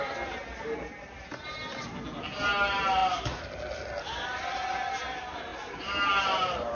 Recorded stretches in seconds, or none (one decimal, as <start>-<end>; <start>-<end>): 0.0-6.7